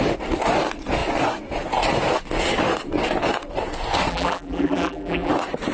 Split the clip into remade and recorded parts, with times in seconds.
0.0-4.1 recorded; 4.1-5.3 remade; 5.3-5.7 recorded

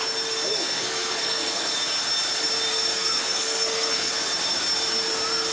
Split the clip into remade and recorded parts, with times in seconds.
0.0-0.5 recorded; 0.5-1.7 remade; 1.7-2.7 recorded; 2.7-4.1 remade; 4.1-5.5 recorded

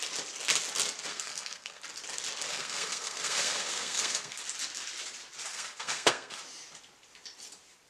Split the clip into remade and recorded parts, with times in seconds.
0.0-1.1 recorded; 1.1-1.8 remade; 1.8-2.5 recorded; 2.5-4.4 remade; 4.4-5.5 recorded; 5.5-6.4 remade; 6.4-7.9 recorded

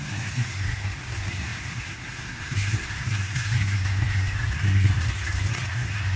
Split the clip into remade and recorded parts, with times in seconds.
0.0-6.2 remade

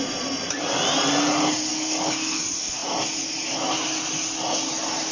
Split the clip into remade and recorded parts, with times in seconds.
0.0-1.7 recorded; 1.7-2.4 remade; 2.4-5.1 recorded

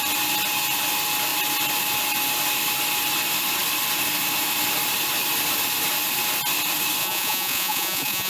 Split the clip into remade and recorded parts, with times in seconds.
0.0-7.0 recorded; 7.0-8.3 remade